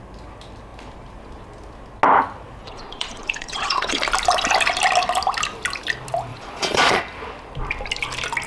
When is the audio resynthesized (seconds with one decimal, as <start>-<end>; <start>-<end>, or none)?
2.6-4.0; 6.3-7.0